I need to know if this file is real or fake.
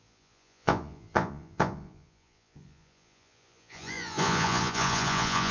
fake